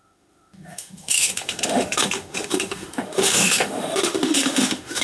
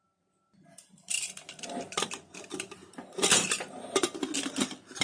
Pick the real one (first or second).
second